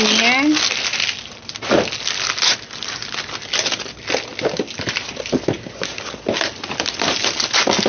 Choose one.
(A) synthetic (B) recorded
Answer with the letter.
B